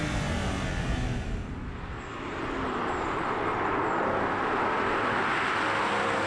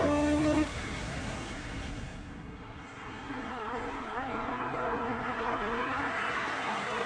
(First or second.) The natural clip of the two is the first